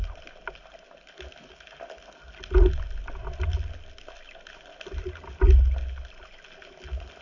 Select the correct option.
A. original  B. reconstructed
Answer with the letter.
A